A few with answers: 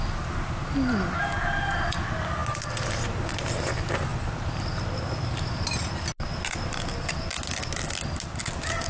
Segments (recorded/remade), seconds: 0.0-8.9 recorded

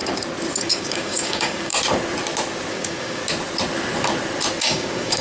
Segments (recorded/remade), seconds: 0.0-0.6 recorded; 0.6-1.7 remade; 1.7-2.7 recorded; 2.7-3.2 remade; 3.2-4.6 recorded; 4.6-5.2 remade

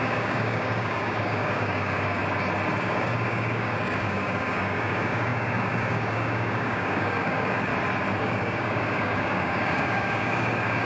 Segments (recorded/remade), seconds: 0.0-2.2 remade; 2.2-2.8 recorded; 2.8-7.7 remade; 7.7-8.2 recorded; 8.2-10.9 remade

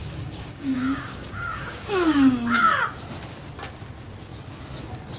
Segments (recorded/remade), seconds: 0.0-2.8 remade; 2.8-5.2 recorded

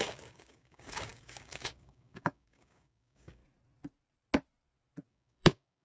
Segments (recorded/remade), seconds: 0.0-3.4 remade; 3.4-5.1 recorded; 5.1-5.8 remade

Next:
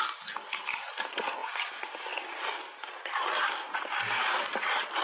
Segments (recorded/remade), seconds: 0.0-5.0 recorded